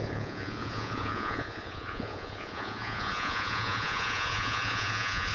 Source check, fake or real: fake